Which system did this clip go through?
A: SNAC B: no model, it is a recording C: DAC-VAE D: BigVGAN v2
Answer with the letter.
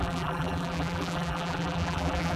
D